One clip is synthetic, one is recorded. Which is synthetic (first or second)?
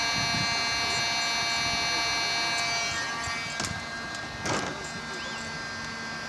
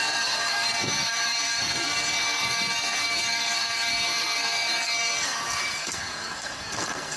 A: second